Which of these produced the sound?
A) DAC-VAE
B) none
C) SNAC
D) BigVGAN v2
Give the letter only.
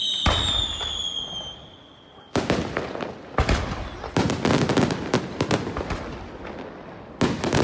B